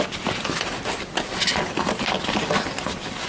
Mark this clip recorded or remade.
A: recorded